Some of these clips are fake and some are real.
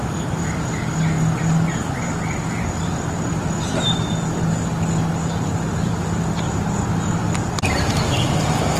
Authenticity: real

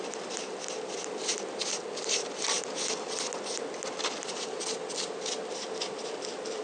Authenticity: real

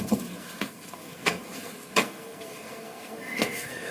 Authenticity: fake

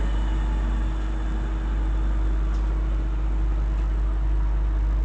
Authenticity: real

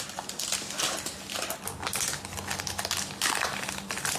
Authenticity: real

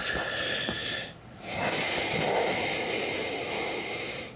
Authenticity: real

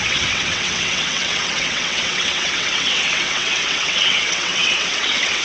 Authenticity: fake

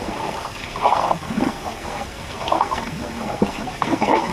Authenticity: fake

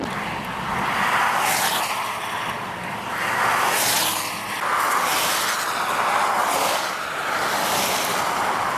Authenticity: real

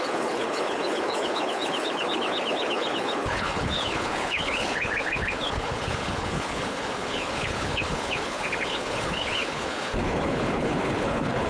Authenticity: fake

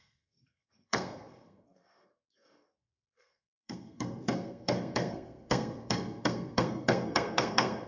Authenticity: fake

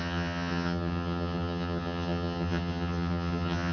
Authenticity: fake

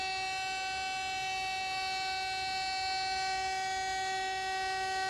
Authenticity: real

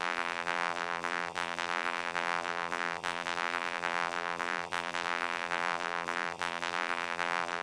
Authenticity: fake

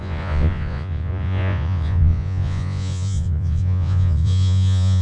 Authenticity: fake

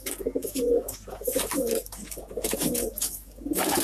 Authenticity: fake